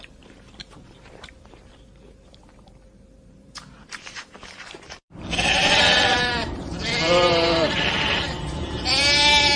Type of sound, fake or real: fake